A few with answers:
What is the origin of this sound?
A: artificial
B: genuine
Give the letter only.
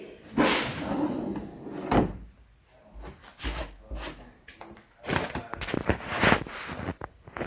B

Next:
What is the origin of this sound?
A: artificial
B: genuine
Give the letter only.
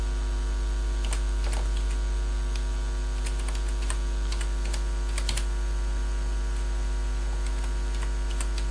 B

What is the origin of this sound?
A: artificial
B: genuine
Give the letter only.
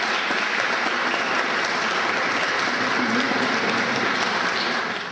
B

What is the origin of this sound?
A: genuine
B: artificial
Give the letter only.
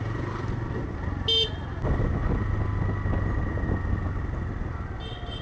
A